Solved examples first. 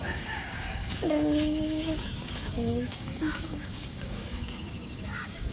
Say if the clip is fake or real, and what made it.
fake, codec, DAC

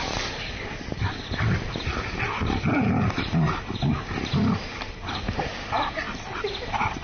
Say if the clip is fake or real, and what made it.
real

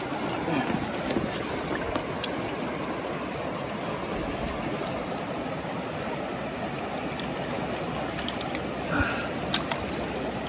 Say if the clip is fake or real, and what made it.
real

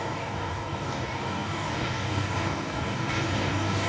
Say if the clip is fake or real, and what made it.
fake, codec, DAC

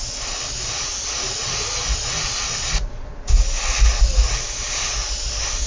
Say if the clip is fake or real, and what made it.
real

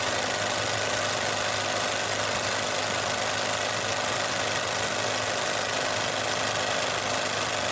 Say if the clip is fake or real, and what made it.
real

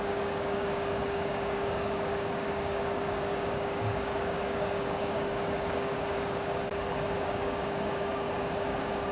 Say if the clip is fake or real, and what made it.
fake, codec, DAC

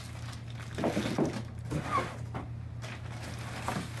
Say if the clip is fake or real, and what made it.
real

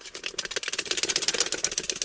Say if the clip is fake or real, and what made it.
real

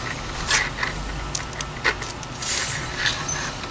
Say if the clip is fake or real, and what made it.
real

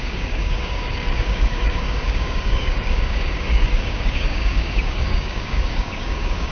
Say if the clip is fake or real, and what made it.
fake, codec, DAC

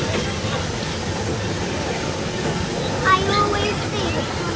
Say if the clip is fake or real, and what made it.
real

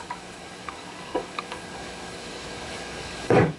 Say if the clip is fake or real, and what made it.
fake, codec, DAC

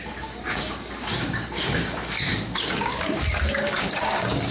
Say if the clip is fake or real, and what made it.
fake, codec, DAC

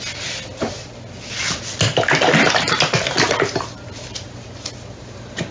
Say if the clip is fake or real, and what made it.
real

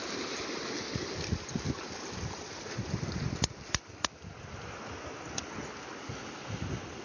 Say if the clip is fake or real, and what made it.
real